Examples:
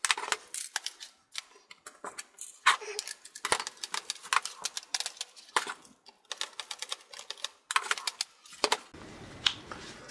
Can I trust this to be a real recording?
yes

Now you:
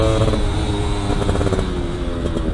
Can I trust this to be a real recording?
yes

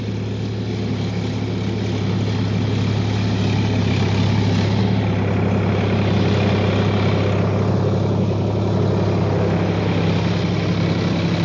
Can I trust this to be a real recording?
yes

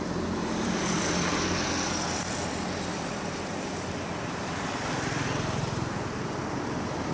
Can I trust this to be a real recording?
no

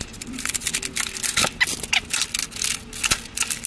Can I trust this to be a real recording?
yes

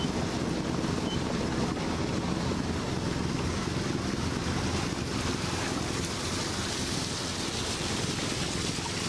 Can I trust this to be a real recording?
yes